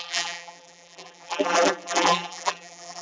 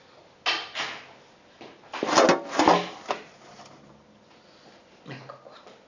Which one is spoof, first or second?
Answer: first